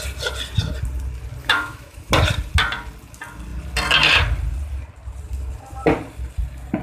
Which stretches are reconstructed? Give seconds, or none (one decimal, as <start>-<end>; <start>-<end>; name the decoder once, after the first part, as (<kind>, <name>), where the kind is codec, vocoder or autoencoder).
1.4-2.1 (autoencoder, DAC-VAE)